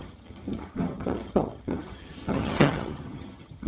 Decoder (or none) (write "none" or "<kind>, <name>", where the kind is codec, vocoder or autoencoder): vocoder, HiFi-GAN